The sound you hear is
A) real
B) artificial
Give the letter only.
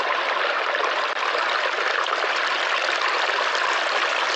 A